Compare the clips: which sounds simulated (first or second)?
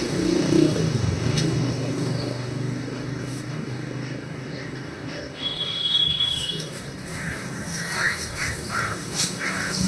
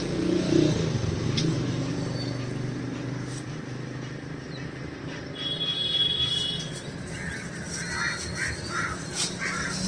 first